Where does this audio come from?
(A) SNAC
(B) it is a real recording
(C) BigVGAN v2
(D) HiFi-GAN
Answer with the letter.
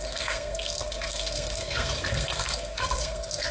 A